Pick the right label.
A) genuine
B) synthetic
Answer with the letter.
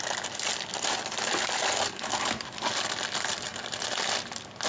A